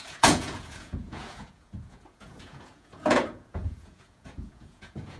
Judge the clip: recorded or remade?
remade